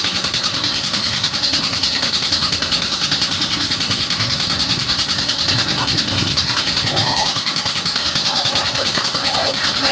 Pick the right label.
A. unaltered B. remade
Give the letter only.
B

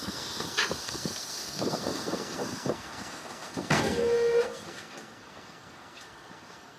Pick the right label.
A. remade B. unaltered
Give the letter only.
A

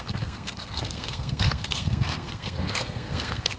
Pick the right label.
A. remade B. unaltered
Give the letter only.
A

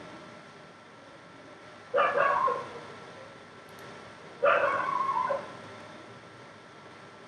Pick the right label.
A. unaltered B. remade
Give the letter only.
A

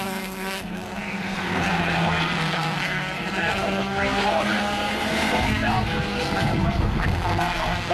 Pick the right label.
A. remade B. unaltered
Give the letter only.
A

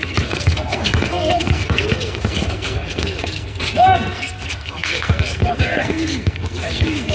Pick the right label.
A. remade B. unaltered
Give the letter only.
A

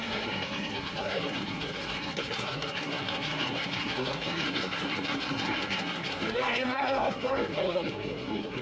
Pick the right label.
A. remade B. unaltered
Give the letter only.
A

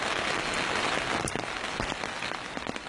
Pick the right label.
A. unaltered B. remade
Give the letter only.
A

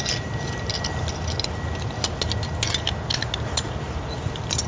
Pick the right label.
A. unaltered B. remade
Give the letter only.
A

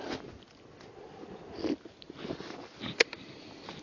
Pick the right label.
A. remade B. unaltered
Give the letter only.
B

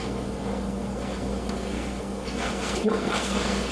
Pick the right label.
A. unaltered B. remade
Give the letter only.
B